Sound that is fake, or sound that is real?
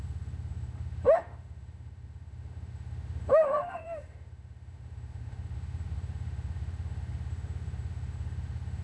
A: fake